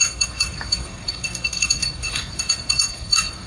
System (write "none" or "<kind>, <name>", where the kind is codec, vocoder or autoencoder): codec, SNAC